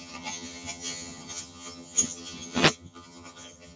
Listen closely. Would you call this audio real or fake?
fake